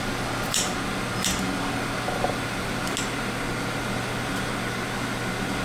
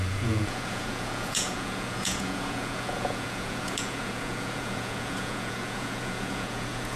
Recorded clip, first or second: first